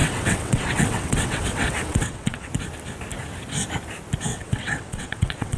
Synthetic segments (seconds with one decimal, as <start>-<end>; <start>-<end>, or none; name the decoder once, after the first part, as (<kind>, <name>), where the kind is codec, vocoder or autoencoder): 0.0-2.5 (vocoder, WaveNeXt); 4.3-5.6